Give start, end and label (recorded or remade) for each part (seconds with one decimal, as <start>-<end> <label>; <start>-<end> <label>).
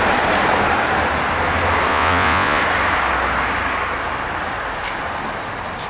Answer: 0.0-1.9 recorded; 1.9-2.6 remade; 2.6-5.9 recorded